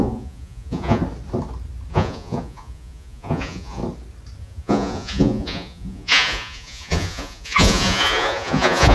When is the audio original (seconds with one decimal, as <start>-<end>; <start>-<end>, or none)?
1.0-1.9; 3.8-4.4